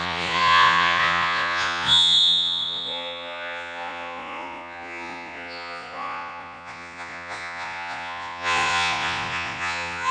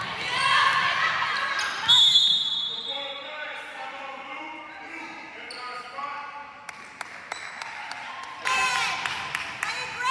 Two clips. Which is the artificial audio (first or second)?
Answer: first